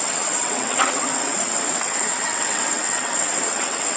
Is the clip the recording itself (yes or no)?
no